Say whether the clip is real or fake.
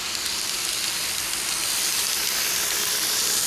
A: real